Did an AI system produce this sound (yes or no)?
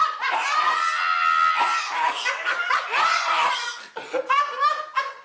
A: no